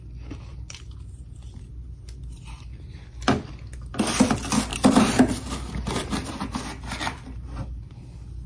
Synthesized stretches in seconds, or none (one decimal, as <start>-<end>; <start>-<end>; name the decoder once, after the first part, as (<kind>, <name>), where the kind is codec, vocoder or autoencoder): 0.5-1.7 (vocoder, BigVGAN v2); 4.7-5.8